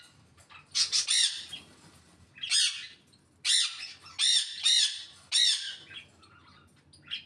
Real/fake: real